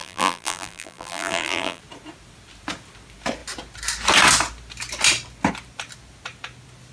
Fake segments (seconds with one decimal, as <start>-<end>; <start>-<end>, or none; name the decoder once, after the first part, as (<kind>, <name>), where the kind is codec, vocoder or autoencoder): 0.0-1.8 (vocoder, BigVGAN v2)